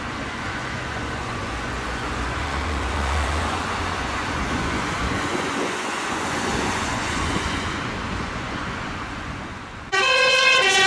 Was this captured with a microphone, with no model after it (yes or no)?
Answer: no